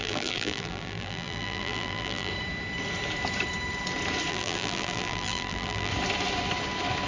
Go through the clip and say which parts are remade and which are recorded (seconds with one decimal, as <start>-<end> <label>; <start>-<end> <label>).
0.0-2.3 remade; 2.3-4.3 recorded; 4.3-5.9 remade; 5.9-7.1 recorded